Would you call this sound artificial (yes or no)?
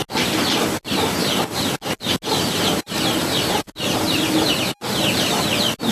no